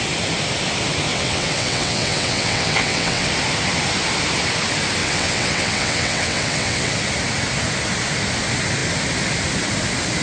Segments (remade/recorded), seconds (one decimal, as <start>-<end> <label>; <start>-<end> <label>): 0.0-1.1 recorded; 1.1-3.3 remade; 3.3-5.0 recorded; 5.0-6.9 remade; 6.9-10.2 recorded